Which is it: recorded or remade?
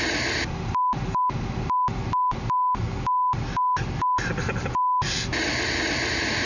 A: recorded